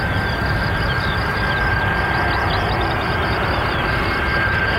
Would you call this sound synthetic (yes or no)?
yes